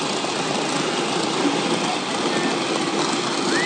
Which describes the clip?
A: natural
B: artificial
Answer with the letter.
A